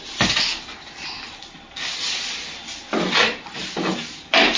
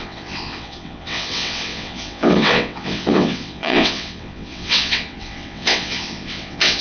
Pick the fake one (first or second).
second